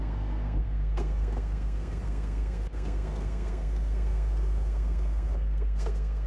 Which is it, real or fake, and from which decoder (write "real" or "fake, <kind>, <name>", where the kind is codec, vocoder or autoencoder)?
fake, codec, SNAC